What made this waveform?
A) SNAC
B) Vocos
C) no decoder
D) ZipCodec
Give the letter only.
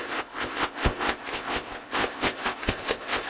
D